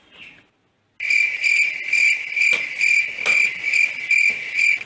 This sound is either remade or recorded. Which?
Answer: recorded